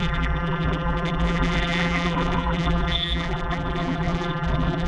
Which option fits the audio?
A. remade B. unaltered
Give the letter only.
A